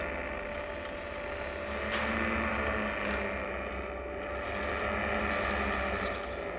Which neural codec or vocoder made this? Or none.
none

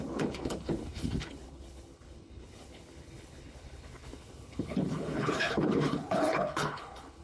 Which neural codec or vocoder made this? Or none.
codec, HILCodec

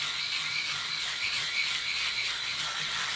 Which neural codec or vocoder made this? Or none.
none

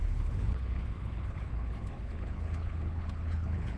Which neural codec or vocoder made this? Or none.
codec, HILCodec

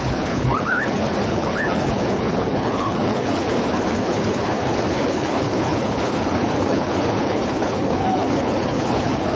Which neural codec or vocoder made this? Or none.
codec, HILCodec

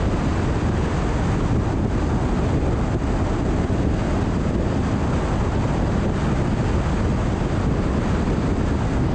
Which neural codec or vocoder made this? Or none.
none